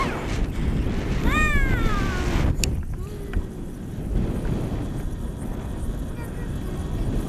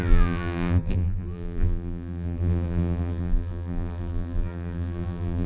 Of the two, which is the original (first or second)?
first